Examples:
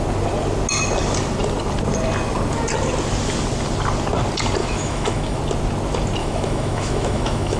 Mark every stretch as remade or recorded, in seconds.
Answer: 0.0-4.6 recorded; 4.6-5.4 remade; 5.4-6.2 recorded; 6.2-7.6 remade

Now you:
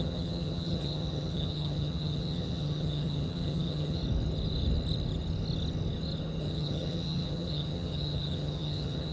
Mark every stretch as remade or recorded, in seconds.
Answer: 0.0-4.0 remade; 4.0-6.4 recorded; 6.4-9.1 remade

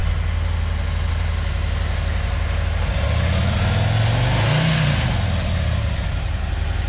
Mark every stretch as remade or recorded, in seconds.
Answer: 0.0-6.9 recorded

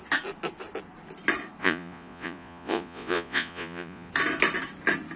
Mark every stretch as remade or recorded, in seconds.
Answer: 0.0-1.6 recorded; 1.6-4.1 remade; 4.1-5.2 recorded

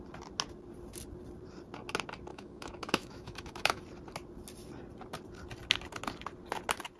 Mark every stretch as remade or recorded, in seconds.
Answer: 0.0-2.3 recorded; 2.3-3.8 remade; 3.8-7.0 recorded

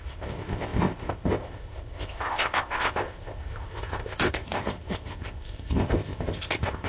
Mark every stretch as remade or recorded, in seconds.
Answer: 0.0-6.9 remade

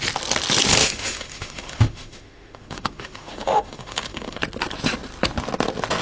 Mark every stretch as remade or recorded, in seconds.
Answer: 0.0-0.8 recorded; 0.8-4.4 remade; 4.4-6.0 recorded